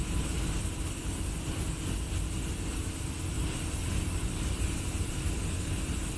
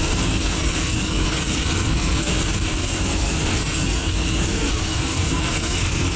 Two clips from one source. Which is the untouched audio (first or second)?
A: first